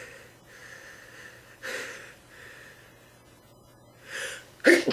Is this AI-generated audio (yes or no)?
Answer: no